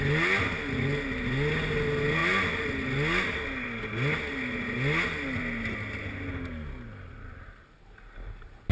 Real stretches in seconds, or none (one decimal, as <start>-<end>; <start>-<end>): 0.0-8.7